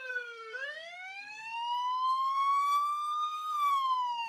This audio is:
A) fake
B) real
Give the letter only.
A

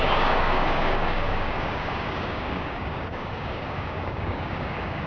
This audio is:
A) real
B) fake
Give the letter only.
B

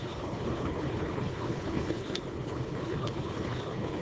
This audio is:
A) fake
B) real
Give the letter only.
A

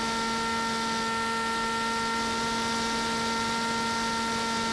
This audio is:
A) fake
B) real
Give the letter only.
B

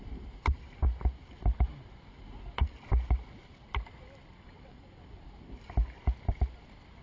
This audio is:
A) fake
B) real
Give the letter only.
B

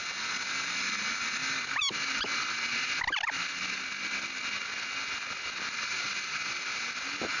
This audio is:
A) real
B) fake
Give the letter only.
A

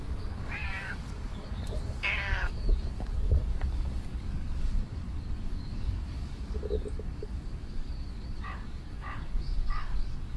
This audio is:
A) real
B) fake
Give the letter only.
B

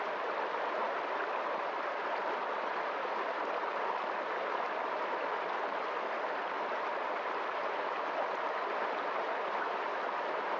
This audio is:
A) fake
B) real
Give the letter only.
A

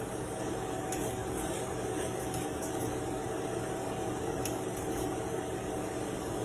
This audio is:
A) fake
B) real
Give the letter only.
A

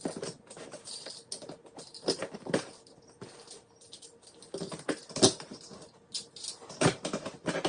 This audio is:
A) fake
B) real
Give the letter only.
B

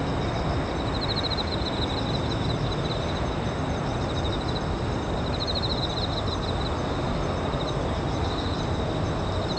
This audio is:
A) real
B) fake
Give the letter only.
A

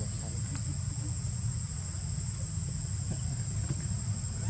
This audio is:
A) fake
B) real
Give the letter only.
B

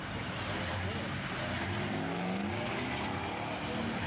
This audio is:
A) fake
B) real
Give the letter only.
B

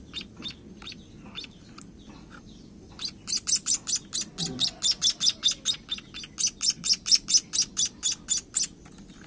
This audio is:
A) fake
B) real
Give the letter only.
B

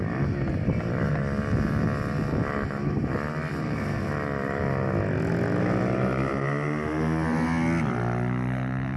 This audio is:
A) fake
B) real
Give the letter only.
B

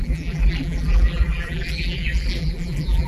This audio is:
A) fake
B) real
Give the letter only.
A